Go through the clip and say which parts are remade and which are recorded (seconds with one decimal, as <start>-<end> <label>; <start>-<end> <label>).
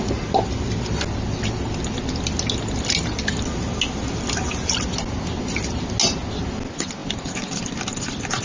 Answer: 0.0-8.4 recorded